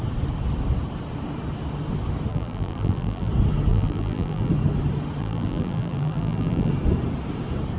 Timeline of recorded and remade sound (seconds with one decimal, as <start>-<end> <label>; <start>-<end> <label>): 0.0-2.3 recorded; 2.3-3.3 remade; 3.3-3.7 recorded; 3.7-4.5 remade; 4.5-5.2 recorded; 5.2-6.7 remade; 6.7-7.8 recorded